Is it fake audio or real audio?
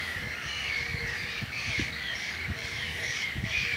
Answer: fake